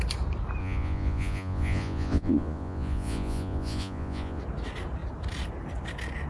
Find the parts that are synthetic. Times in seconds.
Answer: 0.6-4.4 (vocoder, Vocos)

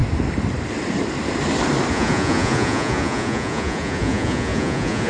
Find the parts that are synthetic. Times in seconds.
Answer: 1.9-5.1 (vocoder, Vocos)